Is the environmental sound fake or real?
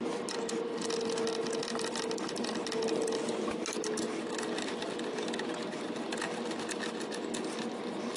real